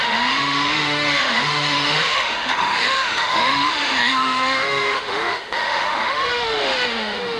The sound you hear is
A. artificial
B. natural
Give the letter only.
A